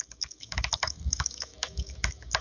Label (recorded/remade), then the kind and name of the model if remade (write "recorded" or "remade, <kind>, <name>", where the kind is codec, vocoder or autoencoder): remade, autoencoder, DAC-VAE